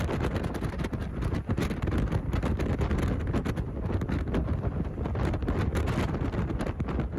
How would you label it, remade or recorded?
recorded